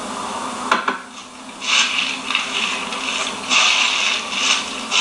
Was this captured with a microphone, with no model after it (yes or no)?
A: yes